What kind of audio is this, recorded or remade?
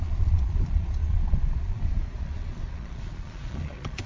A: remade